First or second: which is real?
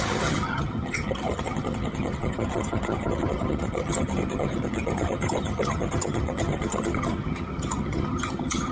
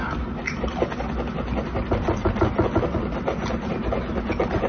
second